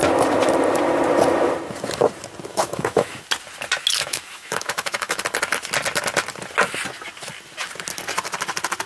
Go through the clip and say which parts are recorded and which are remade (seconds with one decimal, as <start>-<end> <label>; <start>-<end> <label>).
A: 0.0-2.5 recorded; 2.5-3.2 remade; 3.2-4.0 recorded; 4.0-5.2 remade; 5.2-8.9 recorded